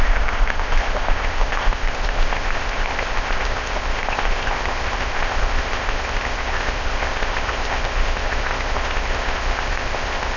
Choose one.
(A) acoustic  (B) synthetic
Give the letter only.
B